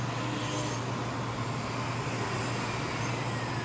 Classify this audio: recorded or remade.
recorded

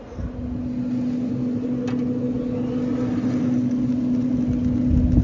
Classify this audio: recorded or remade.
recorded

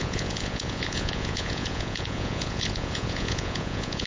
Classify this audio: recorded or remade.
remade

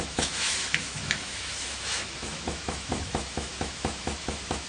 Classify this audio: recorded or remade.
remade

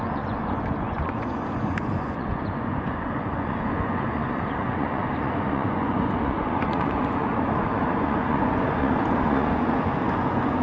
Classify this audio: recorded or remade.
remade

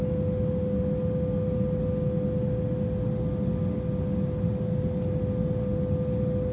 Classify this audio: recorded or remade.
recorded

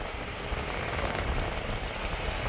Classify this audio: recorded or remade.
recorded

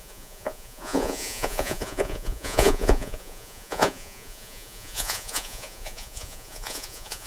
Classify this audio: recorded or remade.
remade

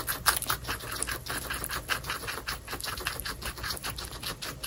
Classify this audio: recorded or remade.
recorded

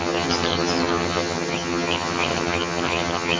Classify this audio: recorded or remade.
remade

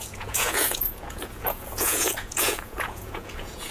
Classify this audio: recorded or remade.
remade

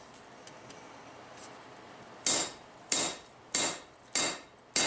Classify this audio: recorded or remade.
recorded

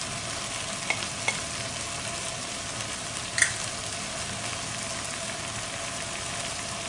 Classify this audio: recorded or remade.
recorded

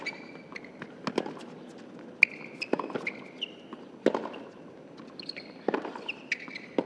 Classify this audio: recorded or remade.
recorded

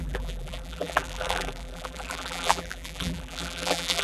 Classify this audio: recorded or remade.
remade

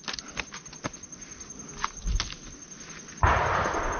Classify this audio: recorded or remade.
recorded